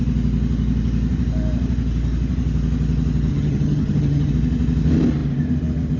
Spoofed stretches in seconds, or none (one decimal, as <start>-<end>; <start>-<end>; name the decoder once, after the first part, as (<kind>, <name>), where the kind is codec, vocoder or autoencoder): 3.3-4.3 (vocoder, HiFi-GAN)